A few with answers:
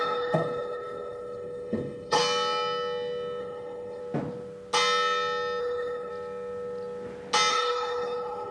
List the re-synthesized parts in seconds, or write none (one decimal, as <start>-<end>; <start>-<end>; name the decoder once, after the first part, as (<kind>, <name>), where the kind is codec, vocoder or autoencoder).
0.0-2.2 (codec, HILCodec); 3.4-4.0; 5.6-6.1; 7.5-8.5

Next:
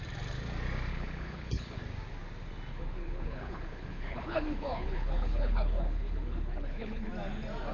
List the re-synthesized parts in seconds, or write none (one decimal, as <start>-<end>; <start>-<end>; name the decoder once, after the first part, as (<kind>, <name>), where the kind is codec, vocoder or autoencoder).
0.9-1.8 (codec, HILCodec); 2.7-7.1

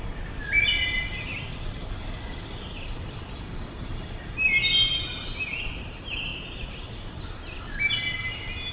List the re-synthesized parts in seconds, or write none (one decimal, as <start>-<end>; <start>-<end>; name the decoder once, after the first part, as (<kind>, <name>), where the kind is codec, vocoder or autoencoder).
none

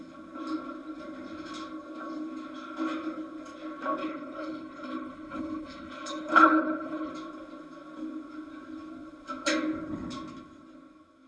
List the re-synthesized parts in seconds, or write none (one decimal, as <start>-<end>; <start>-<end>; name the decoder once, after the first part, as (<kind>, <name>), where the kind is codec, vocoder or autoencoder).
4.0-7.1 (codec, HILCodec)

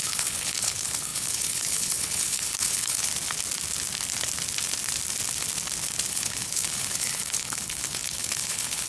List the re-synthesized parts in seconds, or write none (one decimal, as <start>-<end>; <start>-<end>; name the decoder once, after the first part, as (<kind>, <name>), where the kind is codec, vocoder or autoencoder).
0.0-3.1 (codec, HILCodec); 6.1-8.9

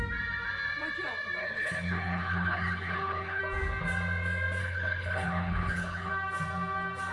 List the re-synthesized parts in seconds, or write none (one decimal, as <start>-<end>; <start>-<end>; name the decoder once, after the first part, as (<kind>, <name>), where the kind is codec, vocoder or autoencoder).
1.4-3.4 (codec, HILCodec); 4.6-6.1

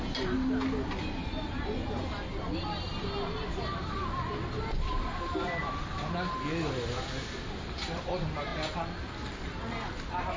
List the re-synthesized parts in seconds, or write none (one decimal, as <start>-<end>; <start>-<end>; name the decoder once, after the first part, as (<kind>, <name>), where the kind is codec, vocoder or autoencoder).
none